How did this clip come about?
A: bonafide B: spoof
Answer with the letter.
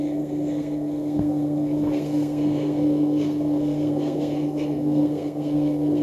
B